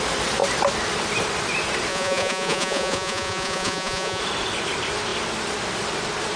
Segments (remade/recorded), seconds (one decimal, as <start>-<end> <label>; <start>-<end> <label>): 0.0-1.9 recorded; 1.9-4.2 remade; 4.2-6.4 recorded